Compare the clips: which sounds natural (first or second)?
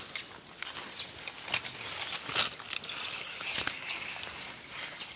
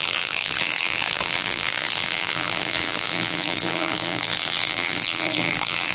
first